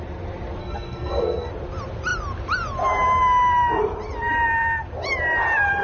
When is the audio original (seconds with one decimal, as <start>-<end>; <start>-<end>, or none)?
0.0-0.6; 1.5-5.8